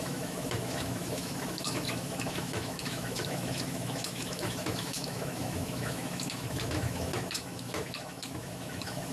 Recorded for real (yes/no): no